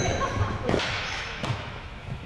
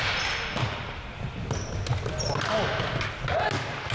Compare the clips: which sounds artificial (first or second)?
first